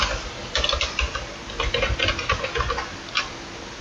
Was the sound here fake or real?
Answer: real